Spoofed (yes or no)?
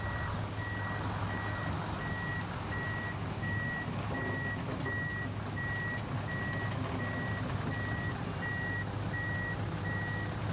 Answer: no